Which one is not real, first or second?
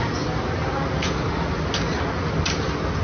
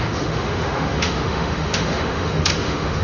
second